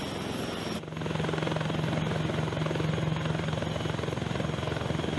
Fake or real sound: real